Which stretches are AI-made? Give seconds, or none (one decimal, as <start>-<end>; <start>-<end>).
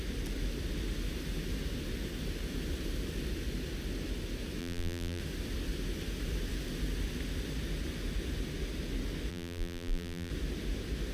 4.6-5.2; 9.3-10.3